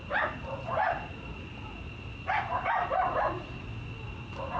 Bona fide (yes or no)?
yes